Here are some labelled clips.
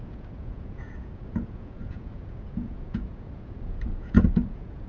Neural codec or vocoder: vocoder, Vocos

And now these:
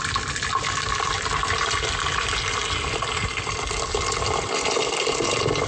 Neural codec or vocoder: none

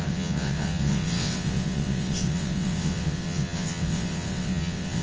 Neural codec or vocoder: vocoder, WaveNeXt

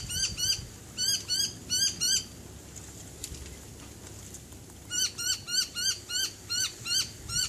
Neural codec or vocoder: none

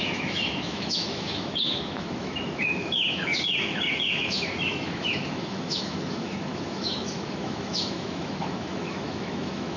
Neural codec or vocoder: autoencoder, DAC-VAE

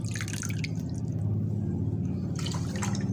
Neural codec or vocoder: none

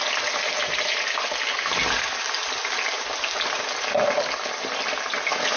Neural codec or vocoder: none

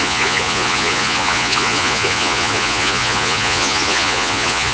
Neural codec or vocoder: vocoder, Vocos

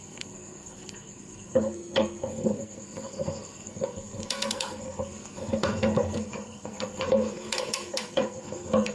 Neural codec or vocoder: codec, SNAC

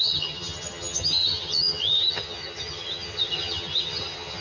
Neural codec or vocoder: vocoder, HiFi-GAN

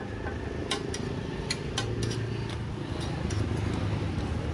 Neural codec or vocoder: none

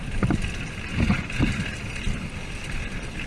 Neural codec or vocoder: none